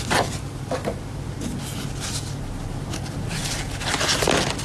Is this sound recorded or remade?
recorded